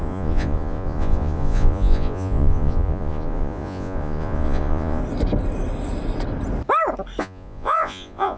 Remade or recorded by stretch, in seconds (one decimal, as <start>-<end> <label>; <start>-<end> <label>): 0.0-5.0 remade; 5.0-7.2 recorded; 7.2-8.4 remade